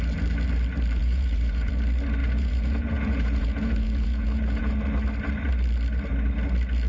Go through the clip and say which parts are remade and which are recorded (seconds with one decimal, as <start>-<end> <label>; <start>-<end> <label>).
0.0-1.0 recorded; 1.0-1.7 remade; 1.7-2.2 recorded; 2.2-4.7 remade; 4.7-6.9 recorded